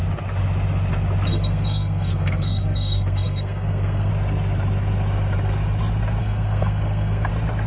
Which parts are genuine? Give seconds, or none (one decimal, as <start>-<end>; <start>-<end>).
0.0-1.3; 4.1-6.2; 7.3-7.7